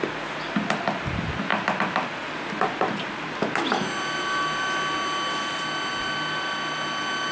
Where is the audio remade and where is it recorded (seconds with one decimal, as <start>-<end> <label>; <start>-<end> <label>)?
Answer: 0.0-7.3 recorded